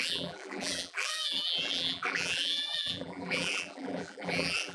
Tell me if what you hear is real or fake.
fake